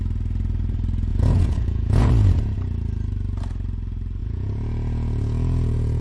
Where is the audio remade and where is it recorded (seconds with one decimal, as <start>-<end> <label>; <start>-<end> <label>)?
0.0-1.1 recorded; 1.1-2.1 remade; 2.1-4.2 recorded; 4.2-6.0 remade